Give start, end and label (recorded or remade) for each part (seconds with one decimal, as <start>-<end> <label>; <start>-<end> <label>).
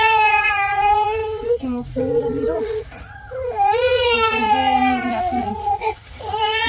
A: 0.0-6.7 remade